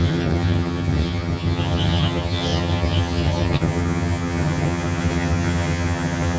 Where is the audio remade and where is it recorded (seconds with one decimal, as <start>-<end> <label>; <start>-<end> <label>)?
0.0-6.4 remade